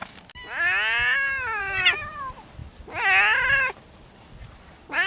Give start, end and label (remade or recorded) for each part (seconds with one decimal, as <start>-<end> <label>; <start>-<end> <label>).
0.0-5.1 recorded